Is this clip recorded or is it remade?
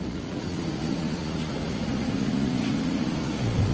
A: remade